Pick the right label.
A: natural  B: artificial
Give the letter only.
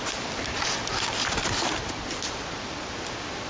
A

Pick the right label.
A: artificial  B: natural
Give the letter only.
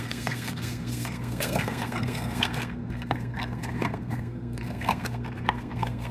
A